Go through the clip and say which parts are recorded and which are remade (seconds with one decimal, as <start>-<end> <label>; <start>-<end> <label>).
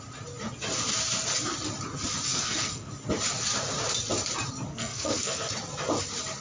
0.0-2.3 recorded; 2.3-2.9 remade; 2.9-4.7 recorded; 4.7-5.5 remade; 5.5-6.4 recorded